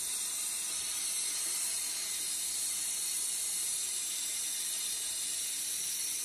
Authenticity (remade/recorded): recorded